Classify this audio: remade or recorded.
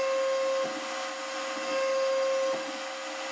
recorded